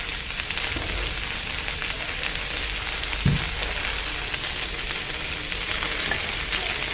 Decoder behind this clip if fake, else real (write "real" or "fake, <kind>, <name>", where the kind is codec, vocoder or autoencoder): real